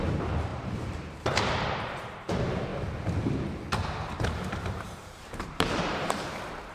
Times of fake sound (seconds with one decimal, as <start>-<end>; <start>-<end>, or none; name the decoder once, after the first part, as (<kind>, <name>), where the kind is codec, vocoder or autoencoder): 0.0-2.7 (vocoder, BigVGAN v2); 4.1-6.7